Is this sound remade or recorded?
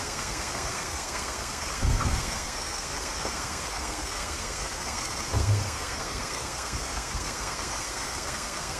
remade